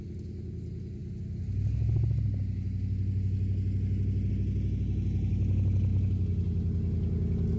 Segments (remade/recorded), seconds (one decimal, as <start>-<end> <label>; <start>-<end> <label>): 0.0-7.6 recorded